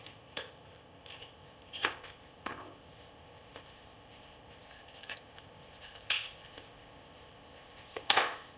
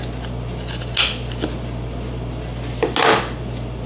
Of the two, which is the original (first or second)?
second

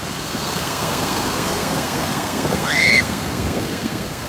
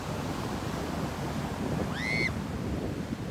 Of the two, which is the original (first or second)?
second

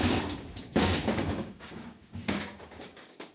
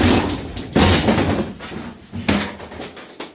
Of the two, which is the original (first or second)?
second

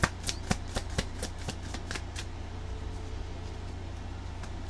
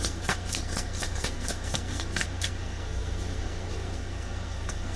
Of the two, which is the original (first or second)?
first